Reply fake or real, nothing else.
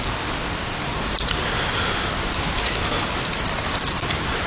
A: real